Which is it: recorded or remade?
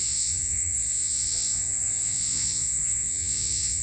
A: remade